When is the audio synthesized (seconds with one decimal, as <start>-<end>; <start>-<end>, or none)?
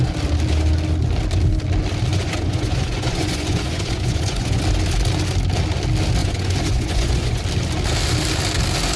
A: 2.1-4.6; 6.2-7.4